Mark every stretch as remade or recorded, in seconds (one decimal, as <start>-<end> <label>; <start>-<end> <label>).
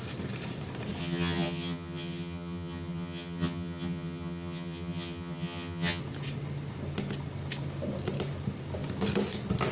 0.0-1.0 recorded; 1.0-6.0 remade; 6.0-9.7 recorded